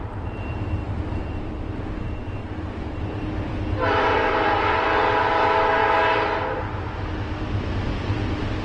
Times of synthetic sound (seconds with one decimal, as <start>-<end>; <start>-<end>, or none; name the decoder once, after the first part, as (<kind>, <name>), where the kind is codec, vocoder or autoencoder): 0.0-5.8 (vocoder, BigVGAN v2); 7.9-8.6

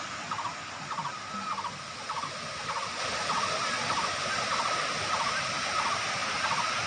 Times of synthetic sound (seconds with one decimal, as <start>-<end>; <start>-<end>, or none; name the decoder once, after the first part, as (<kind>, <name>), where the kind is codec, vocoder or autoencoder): none

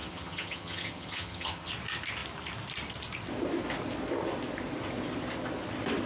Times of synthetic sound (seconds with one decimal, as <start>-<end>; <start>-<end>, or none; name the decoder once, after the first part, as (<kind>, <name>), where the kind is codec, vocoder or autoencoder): 0.0-1.7 (vocoder, HiFi-GAN)

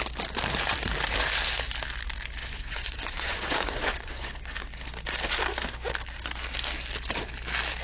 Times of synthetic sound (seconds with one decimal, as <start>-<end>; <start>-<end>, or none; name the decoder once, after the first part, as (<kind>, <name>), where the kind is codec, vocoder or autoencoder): 2.4-4.9 (vocoder, Vocos)

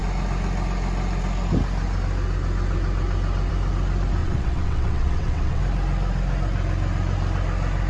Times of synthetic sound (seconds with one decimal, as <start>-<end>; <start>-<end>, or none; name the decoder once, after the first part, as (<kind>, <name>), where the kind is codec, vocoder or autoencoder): 4.2-5.6 (vocoder, WaveNeXt)

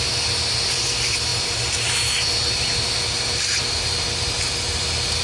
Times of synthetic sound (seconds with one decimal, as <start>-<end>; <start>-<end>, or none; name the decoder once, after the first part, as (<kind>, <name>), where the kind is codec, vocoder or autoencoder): none